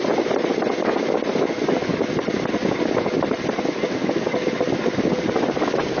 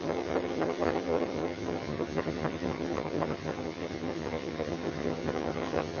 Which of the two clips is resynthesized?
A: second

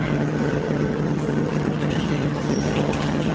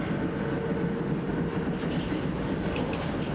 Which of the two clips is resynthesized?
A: first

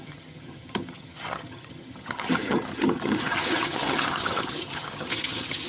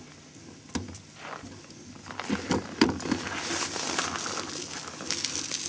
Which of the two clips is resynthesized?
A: first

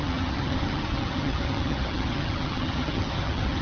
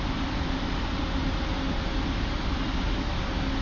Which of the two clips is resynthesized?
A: first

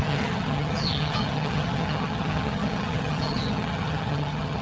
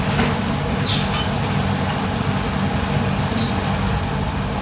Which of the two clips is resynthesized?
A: first